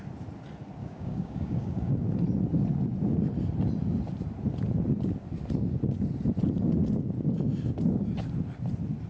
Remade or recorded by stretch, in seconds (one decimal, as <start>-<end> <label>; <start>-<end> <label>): 0.0-0.8 recorded; 0.8-1.9 remade; 1.9-9.1 recorded